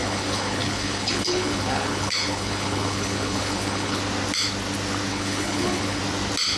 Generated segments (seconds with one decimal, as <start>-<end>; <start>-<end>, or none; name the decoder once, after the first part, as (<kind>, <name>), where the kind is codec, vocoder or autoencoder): 0.0-4.0 (codec, HILCodec); 5.1-6.0

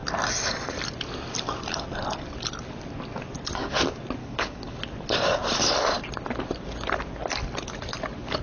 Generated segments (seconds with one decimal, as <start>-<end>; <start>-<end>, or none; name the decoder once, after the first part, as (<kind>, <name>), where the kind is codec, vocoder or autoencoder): 4.2-4.8 (codec, HILCodec)

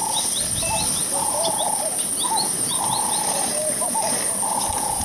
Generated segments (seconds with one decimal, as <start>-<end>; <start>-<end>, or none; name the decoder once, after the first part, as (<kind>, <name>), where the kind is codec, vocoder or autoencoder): none

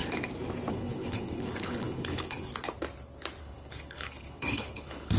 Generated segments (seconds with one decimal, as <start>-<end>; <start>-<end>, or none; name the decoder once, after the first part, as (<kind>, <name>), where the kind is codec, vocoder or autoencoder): 0.7-2.5 (codec, HILCodec); 3.4-5.2

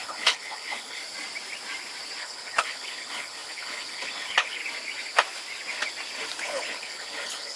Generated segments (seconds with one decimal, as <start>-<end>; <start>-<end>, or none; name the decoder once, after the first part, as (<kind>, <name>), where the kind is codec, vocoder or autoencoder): 0.0-1.0 (codec, HILCodec); 2.2-4.6; 6.4-7.6

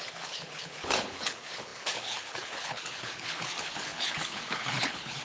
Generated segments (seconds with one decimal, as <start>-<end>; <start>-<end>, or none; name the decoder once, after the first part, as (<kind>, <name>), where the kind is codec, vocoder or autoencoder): 0.0-5.2 (codec, HILCodec)

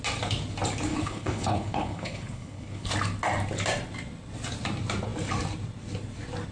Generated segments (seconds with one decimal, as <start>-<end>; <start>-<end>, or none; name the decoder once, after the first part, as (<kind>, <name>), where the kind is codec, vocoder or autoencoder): 0.9-2.9 (codec, HILCodec)